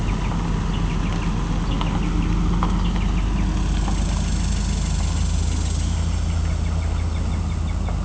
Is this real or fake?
real